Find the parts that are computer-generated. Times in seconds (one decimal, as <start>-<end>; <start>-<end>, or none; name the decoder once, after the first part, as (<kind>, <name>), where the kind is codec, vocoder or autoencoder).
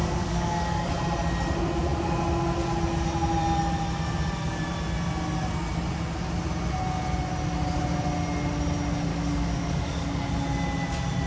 0.0-0.9 (codec, DAC); 9.1-10.3